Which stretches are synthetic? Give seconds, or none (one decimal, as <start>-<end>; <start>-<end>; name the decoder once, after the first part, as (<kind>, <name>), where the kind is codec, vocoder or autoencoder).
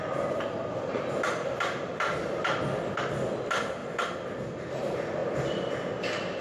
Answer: none